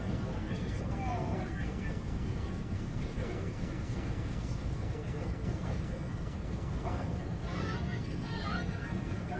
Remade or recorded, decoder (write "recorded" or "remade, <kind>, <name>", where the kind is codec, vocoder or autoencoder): remade, codec, SNAC